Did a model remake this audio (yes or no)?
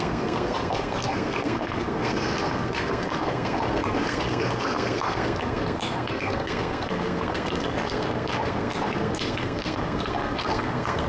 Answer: yes